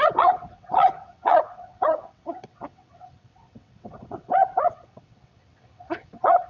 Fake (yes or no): yes